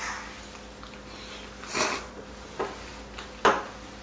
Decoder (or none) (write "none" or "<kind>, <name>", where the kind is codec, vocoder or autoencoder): none